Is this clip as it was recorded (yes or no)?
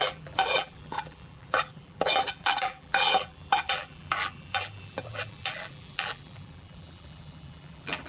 no